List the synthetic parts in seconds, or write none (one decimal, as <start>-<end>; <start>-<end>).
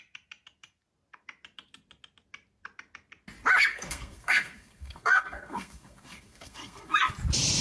3.7-7.1